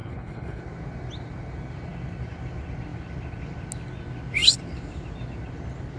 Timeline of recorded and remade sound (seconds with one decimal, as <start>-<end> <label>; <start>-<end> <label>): 0.0-0.6 remade; 0.6-6.0 recorded